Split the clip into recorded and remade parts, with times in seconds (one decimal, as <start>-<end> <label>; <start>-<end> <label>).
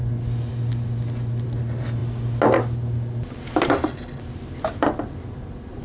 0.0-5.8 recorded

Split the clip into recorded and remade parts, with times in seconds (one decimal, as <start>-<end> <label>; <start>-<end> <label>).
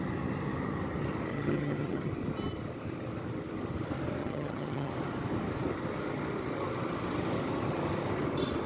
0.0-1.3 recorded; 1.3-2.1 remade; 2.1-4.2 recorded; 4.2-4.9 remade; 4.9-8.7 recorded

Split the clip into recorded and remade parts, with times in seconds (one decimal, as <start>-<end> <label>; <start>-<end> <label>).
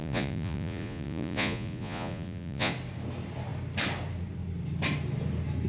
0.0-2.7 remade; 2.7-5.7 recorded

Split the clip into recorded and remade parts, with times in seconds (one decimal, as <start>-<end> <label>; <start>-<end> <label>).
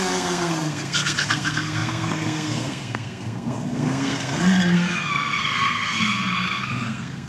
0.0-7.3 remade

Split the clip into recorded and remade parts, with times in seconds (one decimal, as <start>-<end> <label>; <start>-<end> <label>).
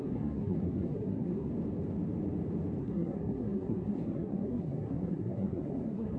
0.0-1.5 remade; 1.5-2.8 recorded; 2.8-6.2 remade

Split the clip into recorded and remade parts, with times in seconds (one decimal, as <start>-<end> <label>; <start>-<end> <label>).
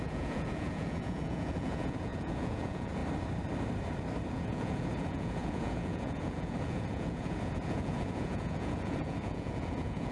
0.0-3.0 remade; 3.0-4.3 recorded; 4.3-10.1 remade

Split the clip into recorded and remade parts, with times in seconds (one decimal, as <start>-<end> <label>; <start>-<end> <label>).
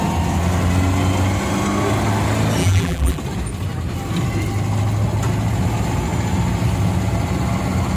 0.0-2.6 recorded; 2.6-3.2 remade; 3.2-8.0 recorded